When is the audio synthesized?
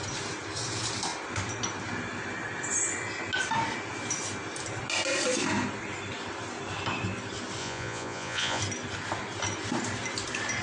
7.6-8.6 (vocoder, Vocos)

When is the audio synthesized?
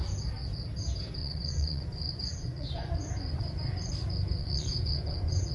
1.2-3.9 (vocoder, Vocos); 4.4-5.5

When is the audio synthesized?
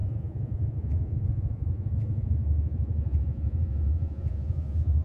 0.0-5.0 (vocoder, Vocos)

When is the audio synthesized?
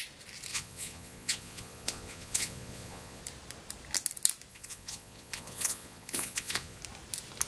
0.5-3.2 (vocoder, Vocos); 4.5-6.8